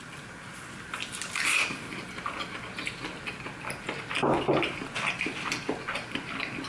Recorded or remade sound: recorded